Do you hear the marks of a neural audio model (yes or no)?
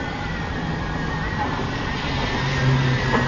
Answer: no